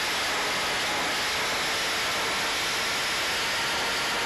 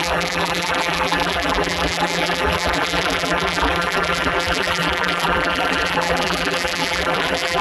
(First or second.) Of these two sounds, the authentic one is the first